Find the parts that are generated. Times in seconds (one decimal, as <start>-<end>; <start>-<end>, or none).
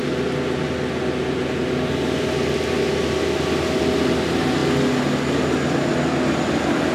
none